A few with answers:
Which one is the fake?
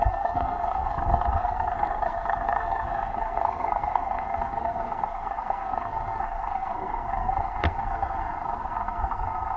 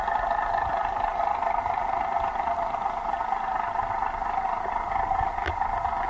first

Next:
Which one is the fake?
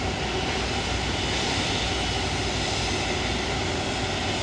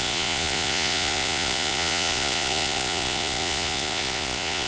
second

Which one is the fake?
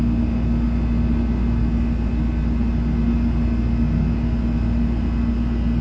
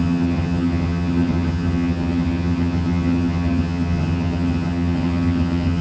second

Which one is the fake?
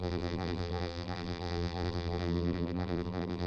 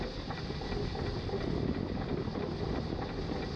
first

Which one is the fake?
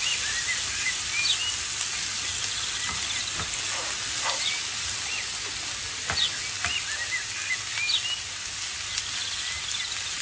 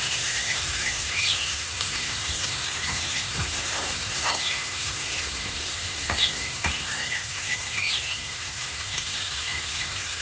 second